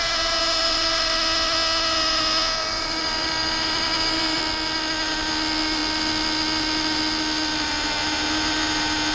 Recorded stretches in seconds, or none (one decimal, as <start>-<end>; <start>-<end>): 0.0-0.6; 1.1-2.6; 4.4-9.1